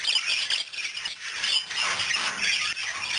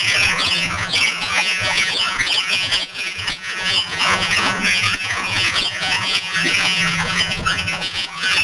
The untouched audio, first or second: first